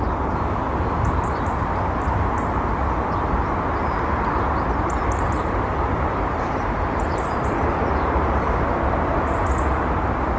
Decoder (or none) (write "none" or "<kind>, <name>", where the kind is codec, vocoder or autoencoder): vocoder, BigVGAN v2